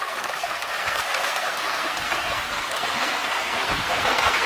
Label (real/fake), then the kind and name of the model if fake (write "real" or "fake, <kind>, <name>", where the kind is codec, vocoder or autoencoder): fake, codec, SNAC